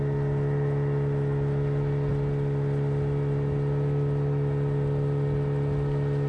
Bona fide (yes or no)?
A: yes